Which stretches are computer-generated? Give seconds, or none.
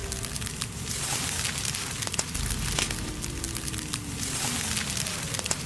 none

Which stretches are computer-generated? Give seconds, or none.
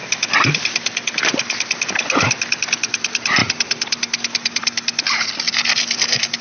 none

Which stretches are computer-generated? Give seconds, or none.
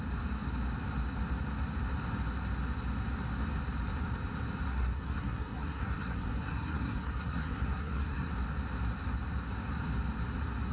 4.7-8.3 (codec, SNAC)